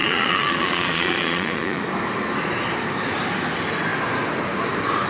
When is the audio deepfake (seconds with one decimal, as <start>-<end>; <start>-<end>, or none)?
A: 0.0-1.8